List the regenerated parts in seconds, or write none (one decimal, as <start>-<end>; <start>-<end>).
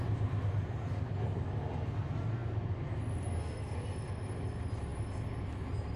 none